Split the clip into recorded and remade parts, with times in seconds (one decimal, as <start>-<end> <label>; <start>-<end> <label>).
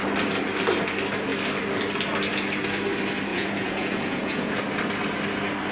0.0-3.3 recorded; 3.3-4.6 remade; 4.6-5.7 recorded